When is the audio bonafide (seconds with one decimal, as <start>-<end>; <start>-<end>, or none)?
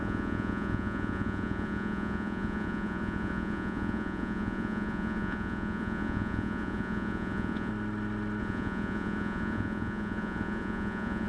7.7-8.4